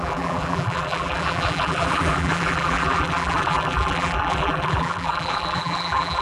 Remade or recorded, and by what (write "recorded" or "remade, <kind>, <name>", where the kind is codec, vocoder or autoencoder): remade, vocoder, BigVGAN v2